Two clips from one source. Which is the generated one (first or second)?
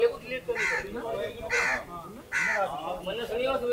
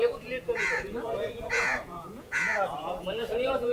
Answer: second